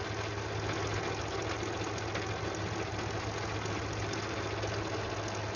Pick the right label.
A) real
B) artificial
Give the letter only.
A